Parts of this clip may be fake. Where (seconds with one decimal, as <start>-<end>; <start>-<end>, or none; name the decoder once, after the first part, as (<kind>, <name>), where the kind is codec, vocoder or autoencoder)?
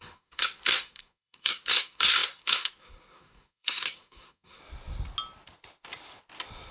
0.0-4.6 (codec, SNAC)